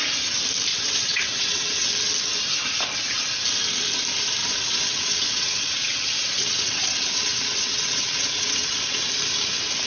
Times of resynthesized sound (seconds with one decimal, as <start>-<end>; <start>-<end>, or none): 0.7-1.9; 4.4-9.1